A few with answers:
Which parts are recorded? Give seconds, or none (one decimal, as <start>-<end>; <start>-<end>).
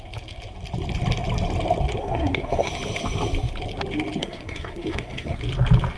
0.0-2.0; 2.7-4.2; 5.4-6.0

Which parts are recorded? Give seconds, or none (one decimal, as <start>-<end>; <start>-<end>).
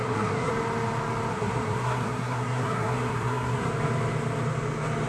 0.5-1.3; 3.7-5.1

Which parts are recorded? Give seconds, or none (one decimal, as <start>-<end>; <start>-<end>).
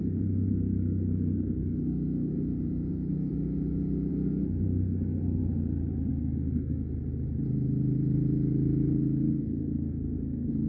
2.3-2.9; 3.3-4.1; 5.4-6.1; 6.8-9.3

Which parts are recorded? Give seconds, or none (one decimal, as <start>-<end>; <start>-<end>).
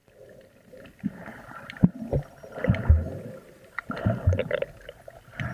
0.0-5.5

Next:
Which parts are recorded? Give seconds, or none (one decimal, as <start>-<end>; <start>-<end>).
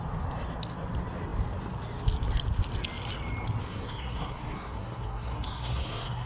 0.0-3.7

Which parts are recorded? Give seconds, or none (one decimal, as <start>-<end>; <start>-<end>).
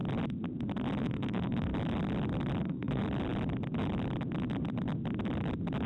0.0-1.0; 1.7-2.6; 3.0-5.9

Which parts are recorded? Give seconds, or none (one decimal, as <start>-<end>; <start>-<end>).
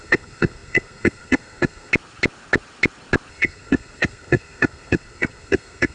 1.9-3.3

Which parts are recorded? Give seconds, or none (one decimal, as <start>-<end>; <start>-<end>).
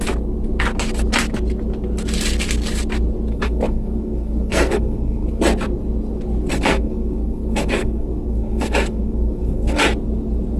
0.0-3.3; 5.4-6.5; 9.8-10.6